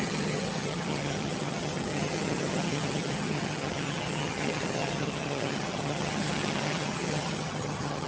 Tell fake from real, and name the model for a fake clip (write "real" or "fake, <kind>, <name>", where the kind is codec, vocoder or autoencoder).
fake, vocoder, HiFi-GAN